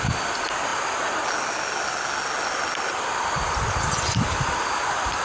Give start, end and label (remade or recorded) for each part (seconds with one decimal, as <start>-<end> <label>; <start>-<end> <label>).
0.0-5.2 recorded